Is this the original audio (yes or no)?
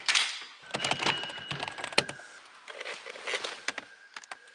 yes